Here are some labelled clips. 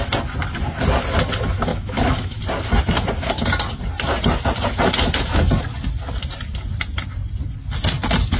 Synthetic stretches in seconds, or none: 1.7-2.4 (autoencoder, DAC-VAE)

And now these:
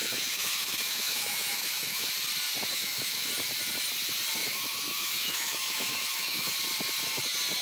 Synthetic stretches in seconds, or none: 0.0-2.1 (autoencoder, DAC-VAE); 2.7-3.3; 4.4-6.5

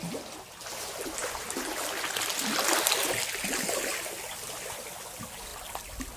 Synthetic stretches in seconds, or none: none

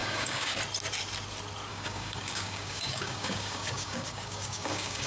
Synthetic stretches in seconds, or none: 0.0-0.6 (codec, DAC); 1.7-5.1

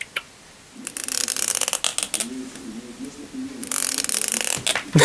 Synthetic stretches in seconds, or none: none